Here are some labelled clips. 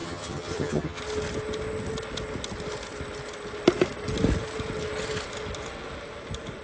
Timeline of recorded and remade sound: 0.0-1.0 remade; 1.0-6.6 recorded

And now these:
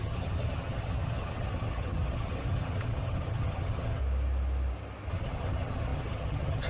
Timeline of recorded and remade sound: 0.0-4.0 remade; 4.0-5.1 recorded; 5.1-6.7 remade

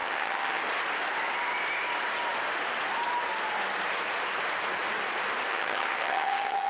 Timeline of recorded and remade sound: 0.0-0.6 remade; 0.6-5.5 recorded; 5.5-6.7 remade

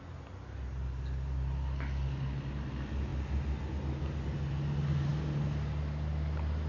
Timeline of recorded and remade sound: 0.0-6.7 recorded

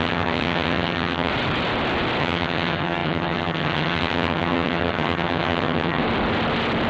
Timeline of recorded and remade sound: 0.0-1.3 remade; 1.3-2.2 recorded; 2.2-6.0 remade; 6.0-6.9 recorded

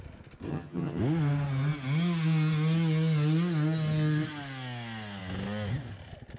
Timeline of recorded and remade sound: 0.0-0.5 recorded; 0.5-1.0 remade; 1.0-6.4 recorded

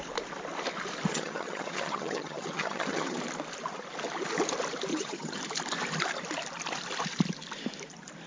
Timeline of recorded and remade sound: 0.0-1.1 recorded; 1.1-3.2 remade; 3.2-4.9 recorded; 4.9-5.4 remade; 5.4-8.3 recorded

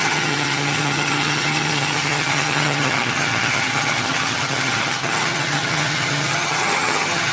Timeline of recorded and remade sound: 0.0-7.3 remade